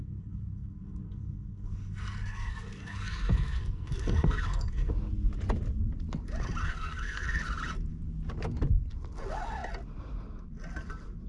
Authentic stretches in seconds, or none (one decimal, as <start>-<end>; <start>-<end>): 4.9-6.6; 7.4-11.3

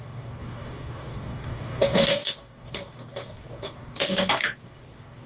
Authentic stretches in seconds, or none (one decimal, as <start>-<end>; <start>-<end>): none

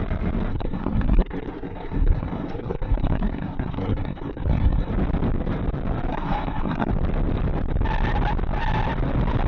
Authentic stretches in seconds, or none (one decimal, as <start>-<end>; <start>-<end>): 0.0-0.5; 4.9-6.1; 6.9-9.5

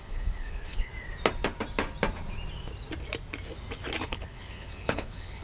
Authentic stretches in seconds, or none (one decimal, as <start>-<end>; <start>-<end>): 0.9-4.1

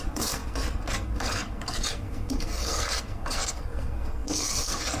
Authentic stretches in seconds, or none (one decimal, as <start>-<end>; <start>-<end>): none